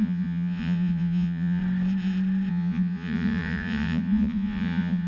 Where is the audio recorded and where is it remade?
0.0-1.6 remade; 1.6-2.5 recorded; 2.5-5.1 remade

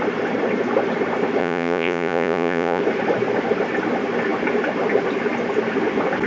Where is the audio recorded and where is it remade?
0.0-1.4 recorded; 1.4-2.8 remade; 2.8-6.3 recorded

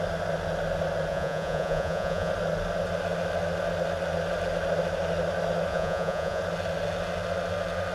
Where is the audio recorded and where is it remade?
0.0-1.1 recorded; 1.1-2.3 remade; 2.3-5.7 recorded; 5.7-6.4 remade; 6.4-7.9 recorded

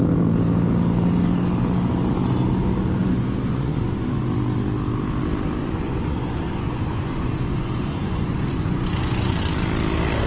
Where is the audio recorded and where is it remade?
0.0-3.0 recorded; 3.0-4.2 remade; 4.2-5.6 recorded; 5.6-9.3 remade; 9.3-10.3 recorded

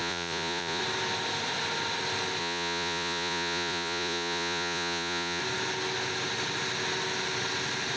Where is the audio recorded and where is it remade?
0.0-0.8 remade; 0.8-2.4 recorded; 2.4-5.4 remade; 5.4-8.0 recorded

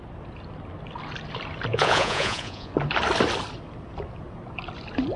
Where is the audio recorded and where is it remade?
0.0-1.7 recorded; 1.7-2.7 remade; 2.7-5.2 recorded

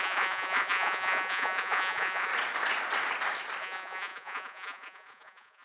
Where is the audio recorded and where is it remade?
0.0-2.3 remade; 2.3-3.6 recorded; 3.6-5.6 remade

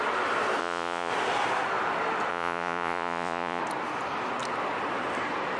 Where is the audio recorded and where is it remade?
0.0-0.6 recorded; 0.6-1.1 remade; 1.1-2.3 recorded; 2.3-3.6 remade; 3.6-5.6 recorded